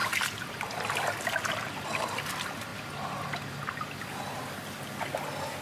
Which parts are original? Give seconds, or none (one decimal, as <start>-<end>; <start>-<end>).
0.0-5.6